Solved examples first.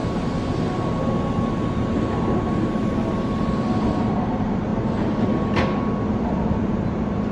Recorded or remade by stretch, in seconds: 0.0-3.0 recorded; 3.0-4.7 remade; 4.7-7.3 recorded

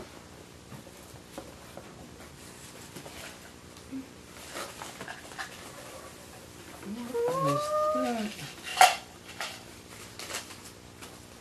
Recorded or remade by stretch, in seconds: 0.0-8.7 recorded; 8.7-10.0 remade; 10.0-11.4 recorded

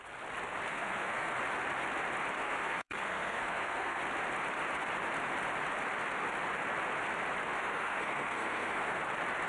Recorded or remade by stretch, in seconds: 0.0-0.7 recorded; 0.7-1.4 remade; 1.4-2.4 recorded; 2.4-4.0 remade; 4.0-7.6 recorded; 7.6-9.0 remade; 9.0-9.5 recorded

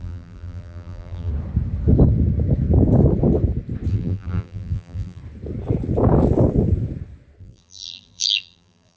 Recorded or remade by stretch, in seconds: 0.0-1.3 remade; 1.3-3.9 recorded; 3.9-5.2 remade; 5.2-7.4 recorded; 7.4-9.0 remade

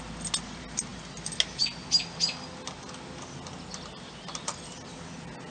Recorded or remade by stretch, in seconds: 0.0-5.5 recorded